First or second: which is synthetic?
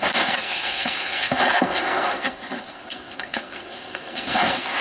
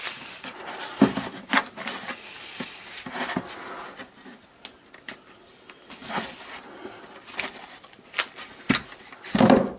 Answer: first